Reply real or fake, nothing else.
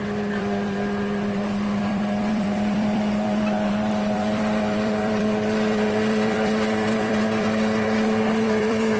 fake